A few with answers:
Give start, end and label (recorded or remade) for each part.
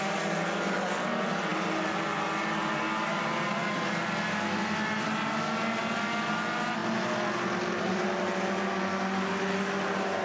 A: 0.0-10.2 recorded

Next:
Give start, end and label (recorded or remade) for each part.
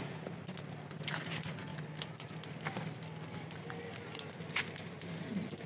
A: 0.0-5.7 recorded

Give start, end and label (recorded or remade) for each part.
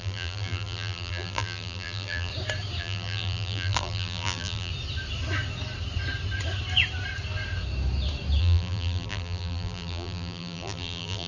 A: 0.0-2.3 remade; 2.3-2.8 recorded; 2.8-4.7 remade; 4.7-8.4 recorded; 8.4-11.3 remade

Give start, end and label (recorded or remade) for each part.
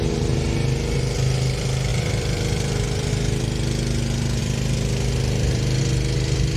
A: 0.0-1.9 recorded; 1.9-3.1 remade; 3.1-4.4 recorded; 4.4-5.8 remade; 5.8-6.6 recorded